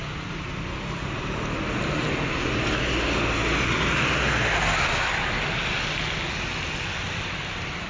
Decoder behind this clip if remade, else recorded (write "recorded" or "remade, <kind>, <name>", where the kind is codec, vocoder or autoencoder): recorded